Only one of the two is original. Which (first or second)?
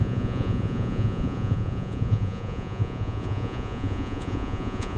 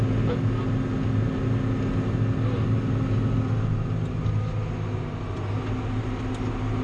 second